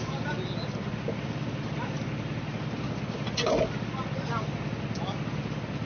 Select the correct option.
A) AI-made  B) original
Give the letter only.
B